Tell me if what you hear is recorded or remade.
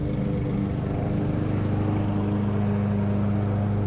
recorded